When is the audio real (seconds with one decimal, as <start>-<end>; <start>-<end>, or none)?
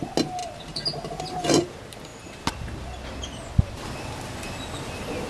0.0-5.3